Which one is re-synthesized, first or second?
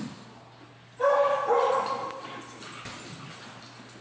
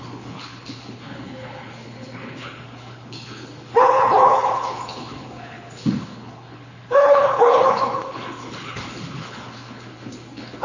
second